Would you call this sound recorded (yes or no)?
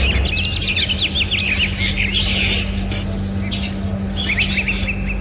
yes